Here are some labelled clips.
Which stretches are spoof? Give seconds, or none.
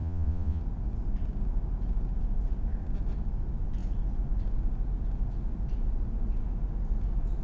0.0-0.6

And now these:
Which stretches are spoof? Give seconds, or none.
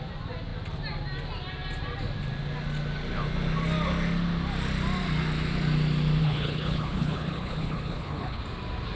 6.2-8.4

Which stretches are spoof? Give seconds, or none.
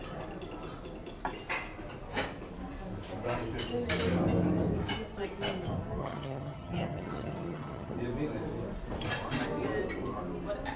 6.0-8.0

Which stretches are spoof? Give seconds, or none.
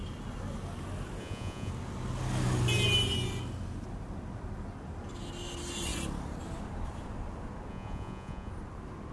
1.2-1.7; 7.7-8.5